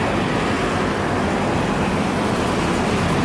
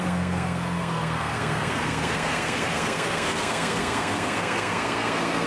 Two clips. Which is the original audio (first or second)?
first